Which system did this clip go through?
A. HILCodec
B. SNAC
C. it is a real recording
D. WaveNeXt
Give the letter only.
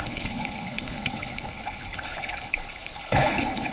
A